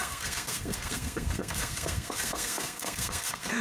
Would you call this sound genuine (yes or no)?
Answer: no